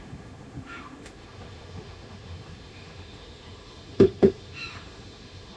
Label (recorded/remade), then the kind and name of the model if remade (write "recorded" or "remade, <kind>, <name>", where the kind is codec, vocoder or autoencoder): remade, autoencoder, DAC-VAE